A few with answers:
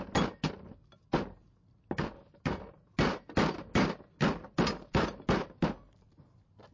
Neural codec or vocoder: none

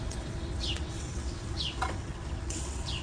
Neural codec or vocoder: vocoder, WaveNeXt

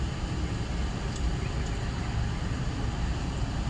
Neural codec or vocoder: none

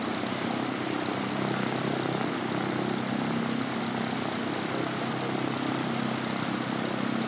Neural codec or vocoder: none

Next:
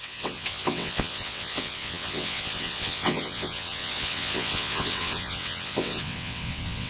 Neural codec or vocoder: vocoder, WaveNeXt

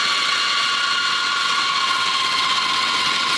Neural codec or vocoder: vocoder, WaveNeXt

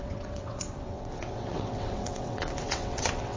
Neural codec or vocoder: vocoder, WaveNeXt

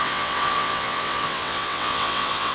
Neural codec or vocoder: vocoder, WaveNeXt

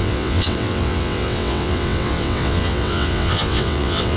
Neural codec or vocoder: vocoder, WaveNeXt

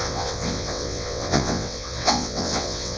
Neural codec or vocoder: vocoder, WaveNeXt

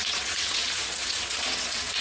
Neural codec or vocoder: vocoder, WaveNeXt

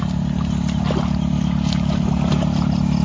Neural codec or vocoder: none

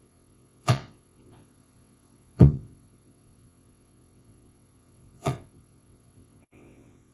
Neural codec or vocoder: vocoder, WaveNeXt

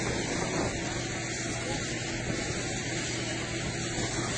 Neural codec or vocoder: none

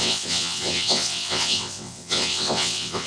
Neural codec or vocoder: vocoder, WaveNeXt